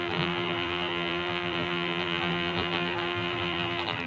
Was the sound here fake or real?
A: fake